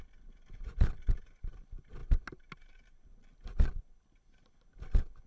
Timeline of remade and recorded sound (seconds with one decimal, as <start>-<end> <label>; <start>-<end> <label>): 0.0-5.3 recorded